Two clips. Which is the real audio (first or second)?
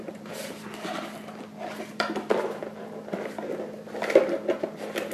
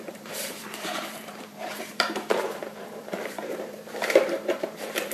first